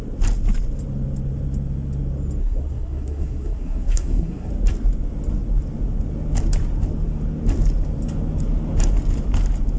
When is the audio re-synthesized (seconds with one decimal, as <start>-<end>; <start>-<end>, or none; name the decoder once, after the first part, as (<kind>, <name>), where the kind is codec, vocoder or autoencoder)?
2.4-4.5 (codec, SNAC)